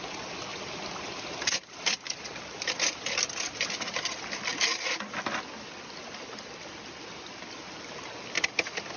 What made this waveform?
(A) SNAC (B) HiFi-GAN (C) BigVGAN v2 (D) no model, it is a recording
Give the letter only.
D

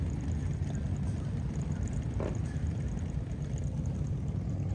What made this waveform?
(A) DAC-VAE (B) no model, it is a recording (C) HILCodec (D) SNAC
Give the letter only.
B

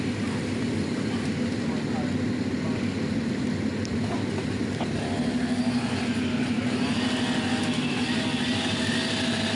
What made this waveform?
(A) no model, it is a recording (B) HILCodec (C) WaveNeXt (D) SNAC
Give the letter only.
A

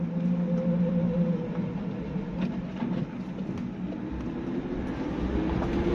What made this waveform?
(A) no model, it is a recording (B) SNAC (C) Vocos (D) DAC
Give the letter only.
A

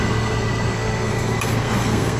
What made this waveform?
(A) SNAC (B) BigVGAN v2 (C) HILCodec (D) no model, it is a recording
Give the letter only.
A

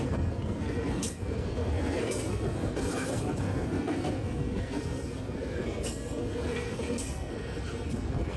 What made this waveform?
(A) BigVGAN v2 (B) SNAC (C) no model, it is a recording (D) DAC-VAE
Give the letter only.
B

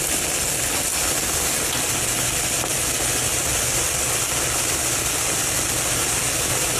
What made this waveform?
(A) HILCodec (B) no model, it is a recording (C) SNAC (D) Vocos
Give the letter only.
B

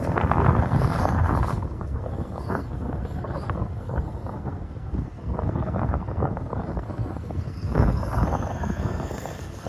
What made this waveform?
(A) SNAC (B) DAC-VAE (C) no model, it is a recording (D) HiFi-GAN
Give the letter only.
A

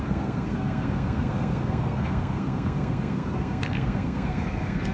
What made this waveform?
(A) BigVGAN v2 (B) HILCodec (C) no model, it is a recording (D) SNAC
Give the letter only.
D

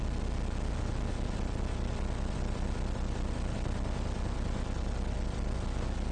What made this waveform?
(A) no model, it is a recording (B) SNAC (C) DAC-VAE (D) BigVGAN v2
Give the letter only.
A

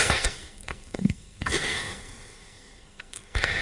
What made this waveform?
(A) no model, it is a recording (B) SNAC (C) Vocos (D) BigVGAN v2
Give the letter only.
B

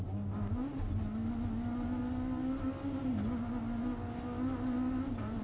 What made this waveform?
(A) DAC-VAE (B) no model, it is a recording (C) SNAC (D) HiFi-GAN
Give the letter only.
B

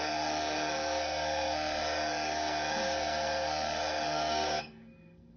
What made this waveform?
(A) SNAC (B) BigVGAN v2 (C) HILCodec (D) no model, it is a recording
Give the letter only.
A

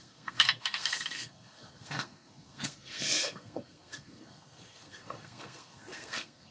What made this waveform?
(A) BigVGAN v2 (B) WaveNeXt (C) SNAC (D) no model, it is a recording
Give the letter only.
C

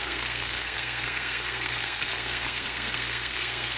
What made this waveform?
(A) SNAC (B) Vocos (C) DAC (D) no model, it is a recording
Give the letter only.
A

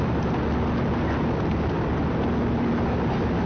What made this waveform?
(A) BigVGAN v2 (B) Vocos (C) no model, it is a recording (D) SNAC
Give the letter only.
C